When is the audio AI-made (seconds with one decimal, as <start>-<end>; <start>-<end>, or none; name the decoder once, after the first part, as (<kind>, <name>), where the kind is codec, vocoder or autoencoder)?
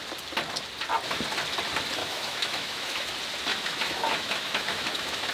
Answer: 2.0-3.1 (autoencoder, DAC-VAE); 3.5-5.3